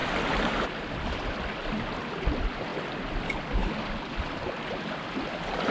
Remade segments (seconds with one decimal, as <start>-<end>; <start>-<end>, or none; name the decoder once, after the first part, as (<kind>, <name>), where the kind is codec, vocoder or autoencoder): 0.0-1.8 (vocoder, BigVGAN v2)